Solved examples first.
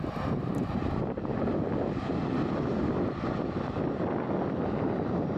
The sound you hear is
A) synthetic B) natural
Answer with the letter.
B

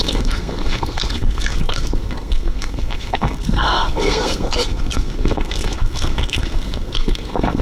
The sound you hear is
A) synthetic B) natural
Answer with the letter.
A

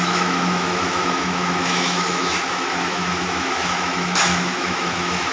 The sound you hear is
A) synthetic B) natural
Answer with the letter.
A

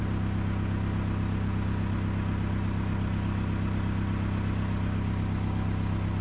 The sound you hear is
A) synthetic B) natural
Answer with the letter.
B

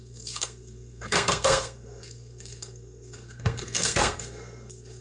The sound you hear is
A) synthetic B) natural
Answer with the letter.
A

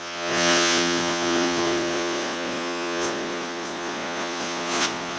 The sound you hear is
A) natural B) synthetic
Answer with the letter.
B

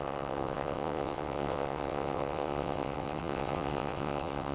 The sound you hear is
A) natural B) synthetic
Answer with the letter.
B